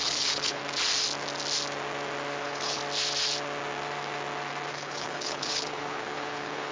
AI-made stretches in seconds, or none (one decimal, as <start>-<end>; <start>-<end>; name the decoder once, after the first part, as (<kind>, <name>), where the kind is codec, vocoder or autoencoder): 0.0-0.6 (codec, HILCodec); 2.4-2.8; 4.7-6.7